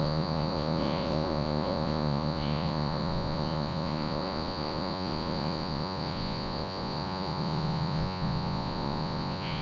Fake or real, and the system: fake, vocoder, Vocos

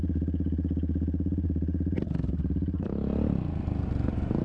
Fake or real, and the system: real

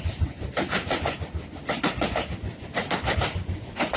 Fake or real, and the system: fake, vocoder, Vocos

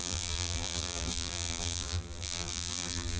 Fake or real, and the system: fake, vocoder, BigVGAN v2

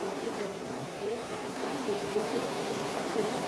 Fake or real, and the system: fake, codec, SNAC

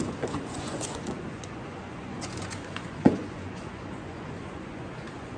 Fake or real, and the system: fake, vocoder, Vocos